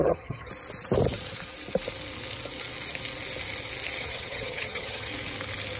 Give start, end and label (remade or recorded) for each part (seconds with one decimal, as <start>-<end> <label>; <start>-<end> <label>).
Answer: 0.0-0.5 remade; 0.5-4.0 recorded; 4.0-5.1 remade; 5.1-5.8 recorded